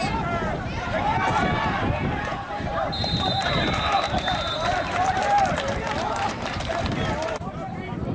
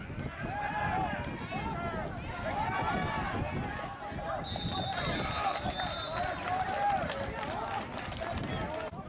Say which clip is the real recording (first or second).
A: second